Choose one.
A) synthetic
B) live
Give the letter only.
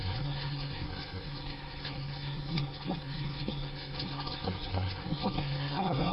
A